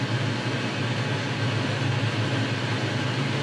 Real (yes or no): yes